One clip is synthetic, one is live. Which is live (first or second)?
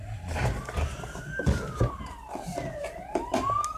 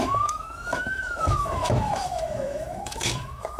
first